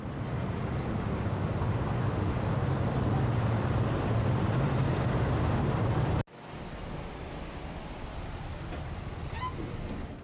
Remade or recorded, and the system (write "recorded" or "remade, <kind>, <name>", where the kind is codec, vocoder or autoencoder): recorded